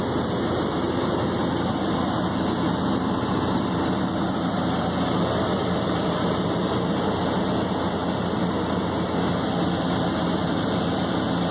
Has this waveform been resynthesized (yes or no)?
no